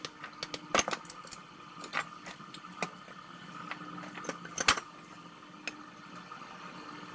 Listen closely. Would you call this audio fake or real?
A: real